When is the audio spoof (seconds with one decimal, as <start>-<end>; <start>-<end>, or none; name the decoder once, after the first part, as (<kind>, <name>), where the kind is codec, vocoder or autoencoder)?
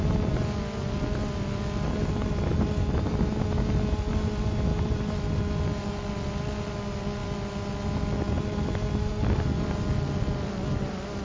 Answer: none